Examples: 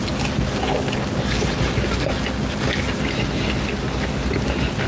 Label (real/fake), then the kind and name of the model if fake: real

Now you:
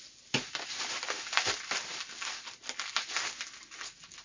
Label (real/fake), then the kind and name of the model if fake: real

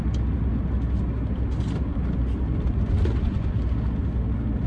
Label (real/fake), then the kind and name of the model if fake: real